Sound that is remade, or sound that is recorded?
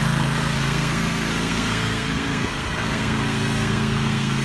remade